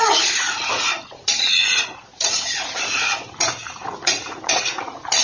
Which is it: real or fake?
fake